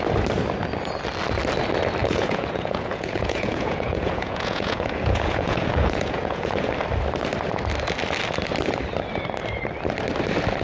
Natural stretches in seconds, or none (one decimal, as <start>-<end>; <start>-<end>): 0.0-2.0; 6.7-10.6